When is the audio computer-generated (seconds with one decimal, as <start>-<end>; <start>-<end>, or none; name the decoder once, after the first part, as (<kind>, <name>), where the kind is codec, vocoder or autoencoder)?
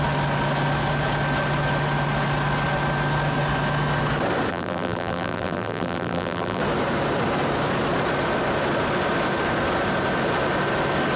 4.5-6.6 (vocoder, BigVGAN v2)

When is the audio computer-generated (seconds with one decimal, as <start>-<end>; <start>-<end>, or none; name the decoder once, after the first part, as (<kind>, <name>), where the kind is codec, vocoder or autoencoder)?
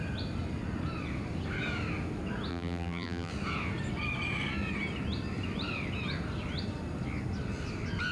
2.5-3.3 (vocoder, BigVGAN v2)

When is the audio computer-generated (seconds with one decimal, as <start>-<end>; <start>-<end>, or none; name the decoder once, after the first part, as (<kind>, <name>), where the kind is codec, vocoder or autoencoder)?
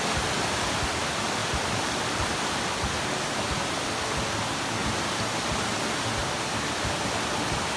1.4-2.6 (vocoder, BigVGAN v2)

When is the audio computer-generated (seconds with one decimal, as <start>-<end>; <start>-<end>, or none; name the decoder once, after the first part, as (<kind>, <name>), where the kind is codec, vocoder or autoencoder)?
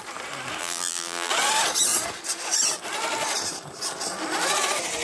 0.6-1.3 (vocoder, BigVGAN v2)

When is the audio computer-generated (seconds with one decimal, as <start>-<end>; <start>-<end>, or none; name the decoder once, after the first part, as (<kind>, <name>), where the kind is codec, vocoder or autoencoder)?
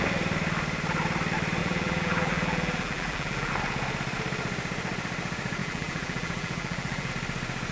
1.6-3.5 (vocoder, BigVGAN v2); 5.6-7.1